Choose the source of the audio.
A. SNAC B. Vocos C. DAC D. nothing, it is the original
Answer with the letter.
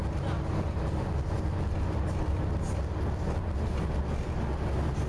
D